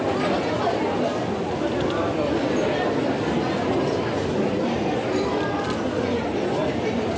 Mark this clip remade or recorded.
recorded